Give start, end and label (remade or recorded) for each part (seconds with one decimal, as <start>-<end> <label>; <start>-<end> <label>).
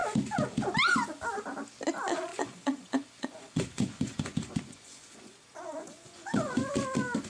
0.0-2.3 recorded; 2.3-6.7 remade; 6.7-7.3 recorded